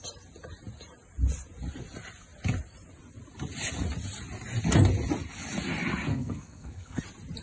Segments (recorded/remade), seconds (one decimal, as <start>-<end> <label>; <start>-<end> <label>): 0.0-6.1 recorded; 6.1-7.0 remade; 7.0-7.4 recorded